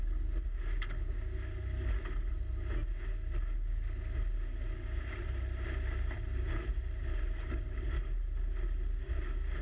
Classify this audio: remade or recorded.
recorded